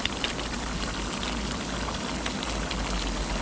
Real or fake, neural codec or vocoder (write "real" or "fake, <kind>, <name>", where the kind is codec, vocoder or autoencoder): real